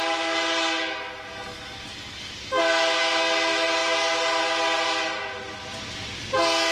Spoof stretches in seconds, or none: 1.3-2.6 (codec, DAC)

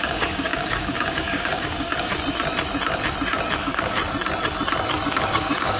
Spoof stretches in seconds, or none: 0.0-2.1 (codec, DAC); 3.6-4.0; 5.1-5.8

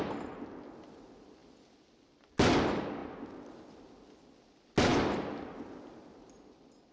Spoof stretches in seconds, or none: none